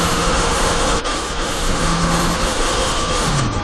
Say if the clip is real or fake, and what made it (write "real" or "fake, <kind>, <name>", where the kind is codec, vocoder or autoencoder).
fake, autoencoder, DAC-VAE